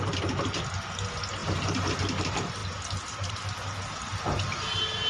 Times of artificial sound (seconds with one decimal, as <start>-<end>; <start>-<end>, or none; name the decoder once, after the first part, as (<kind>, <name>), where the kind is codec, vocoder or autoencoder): none